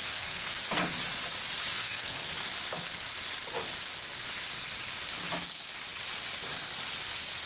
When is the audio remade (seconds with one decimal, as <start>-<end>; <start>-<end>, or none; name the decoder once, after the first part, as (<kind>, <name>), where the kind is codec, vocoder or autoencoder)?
0.0-1.0 (codec, SNAC); 1.7-2.3